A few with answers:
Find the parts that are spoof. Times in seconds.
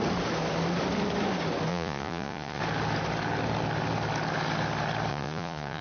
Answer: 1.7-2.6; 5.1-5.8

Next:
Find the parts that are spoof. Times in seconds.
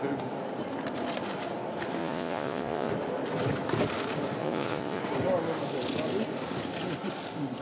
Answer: 2.0-2.9; 4.4-5.0